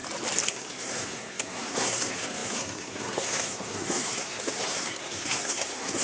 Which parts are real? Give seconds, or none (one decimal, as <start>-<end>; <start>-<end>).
0.0-0.5